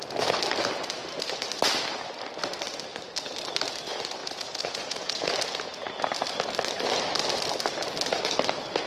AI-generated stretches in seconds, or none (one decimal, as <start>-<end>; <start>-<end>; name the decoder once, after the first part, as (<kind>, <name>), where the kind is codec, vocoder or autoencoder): 4.2-5.3 (vocoder, Vocos)